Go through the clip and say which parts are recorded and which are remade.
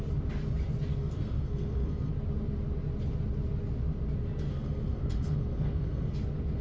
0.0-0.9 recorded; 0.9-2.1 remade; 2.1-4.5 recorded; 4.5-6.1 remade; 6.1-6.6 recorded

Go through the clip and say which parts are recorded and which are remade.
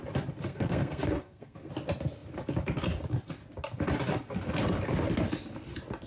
0.0-0.5 recorded; 0.5-1.7 remade; 1.7-6.1 recorded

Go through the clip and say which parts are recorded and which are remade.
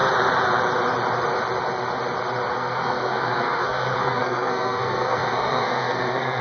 0.0-2.5 recorded; 2.5-6.4 remade